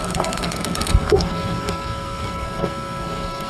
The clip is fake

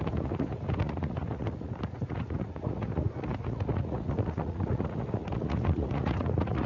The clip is fake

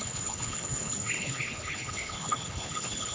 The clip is fake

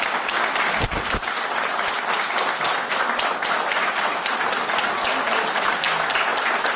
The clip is real